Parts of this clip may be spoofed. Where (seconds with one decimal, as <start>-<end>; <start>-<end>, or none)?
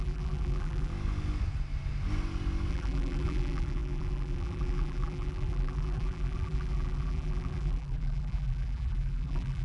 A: 0.0-0.9; 2.7-9.6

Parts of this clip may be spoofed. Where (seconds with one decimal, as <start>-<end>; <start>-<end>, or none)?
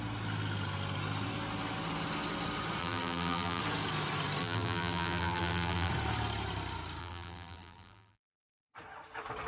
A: 2.8-3.6; 4.4-5.9; 7.0-8.4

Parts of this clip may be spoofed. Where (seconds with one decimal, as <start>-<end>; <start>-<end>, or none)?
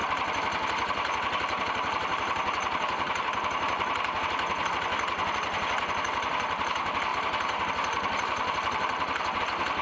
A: 0.0-4.7; 7.1-9.4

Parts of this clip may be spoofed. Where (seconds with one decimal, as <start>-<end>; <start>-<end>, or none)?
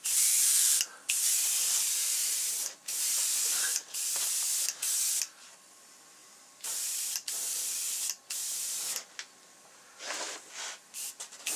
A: 2.2-3.0; 6.2-7.1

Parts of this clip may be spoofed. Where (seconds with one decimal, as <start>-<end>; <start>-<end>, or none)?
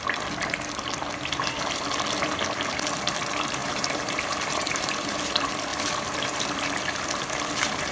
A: 3.6-4.9